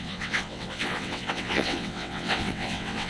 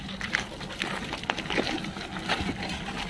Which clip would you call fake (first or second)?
first